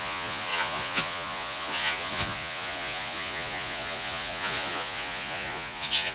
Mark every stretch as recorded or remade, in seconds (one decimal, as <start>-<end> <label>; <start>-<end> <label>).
0.0-6.1 remade